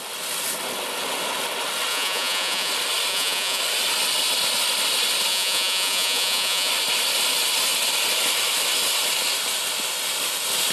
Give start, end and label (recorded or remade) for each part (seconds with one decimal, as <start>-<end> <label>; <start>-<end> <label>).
0.0-1.9 recorded; 1.9-2.7 remade; 2.7-3.1 recorded; 3.1-3.6 remade; 3.6-5.3 recorded; 5.3-6.7 remade; 6.7-10.7 recorded